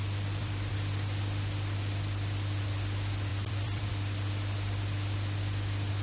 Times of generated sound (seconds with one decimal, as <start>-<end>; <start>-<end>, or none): 0.0-0.7; 3.3-3.9